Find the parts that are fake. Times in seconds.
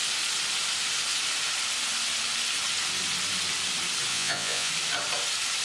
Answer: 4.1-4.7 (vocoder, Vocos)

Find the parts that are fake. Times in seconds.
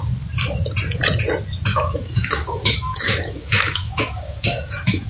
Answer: 1.7-5.1 (autoencoder, DAC-VAE)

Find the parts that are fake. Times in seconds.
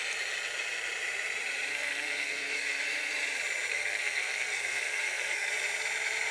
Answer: 1.7-3.1 (codec, SNAC); 3.7-5.5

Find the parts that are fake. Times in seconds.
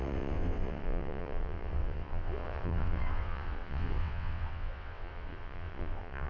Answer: 0.0-6.3 (vocoder, WaveNeXt)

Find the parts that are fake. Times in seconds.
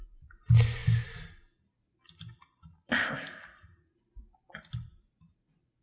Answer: none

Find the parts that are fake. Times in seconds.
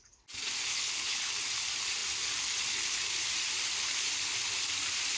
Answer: 0.7-1.3 (codec, HILCodec)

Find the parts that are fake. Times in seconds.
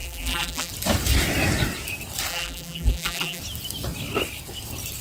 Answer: 0.0-0.7 (vocoder, BigVGAN v2); 2.3-3.4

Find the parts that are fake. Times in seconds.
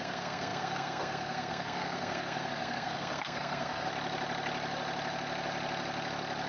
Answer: 0.0-3.9 (codec, SNAC)